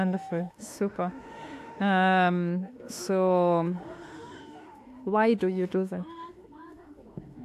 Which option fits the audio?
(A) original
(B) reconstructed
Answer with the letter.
B